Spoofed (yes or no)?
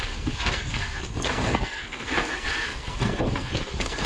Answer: yes